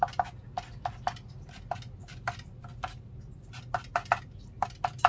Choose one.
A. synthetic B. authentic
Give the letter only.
B